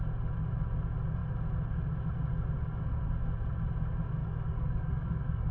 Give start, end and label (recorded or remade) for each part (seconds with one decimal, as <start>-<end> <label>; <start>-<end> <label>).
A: 0.0-4.2 recorded; 4.2-5.5 remade